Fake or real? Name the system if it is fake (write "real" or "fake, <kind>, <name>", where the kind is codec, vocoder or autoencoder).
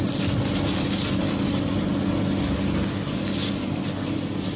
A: real